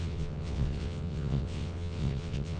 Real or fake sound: fake